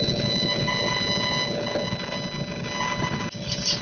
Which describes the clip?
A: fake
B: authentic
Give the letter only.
B